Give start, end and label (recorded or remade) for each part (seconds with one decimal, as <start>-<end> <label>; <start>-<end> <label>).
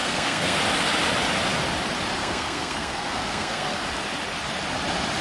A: 0.0-0.6 remade; 0.6-2.2 recorded; 2.2-3.8 remade; 3.8-5.2 recorded